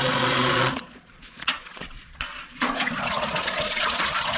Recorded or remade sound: remade